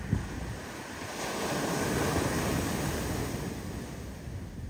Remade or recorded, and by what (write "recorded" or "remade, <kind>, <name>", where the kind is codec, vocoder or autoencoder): recorded